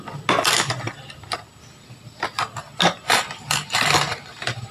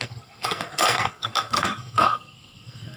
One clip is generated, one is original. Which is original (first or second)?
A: first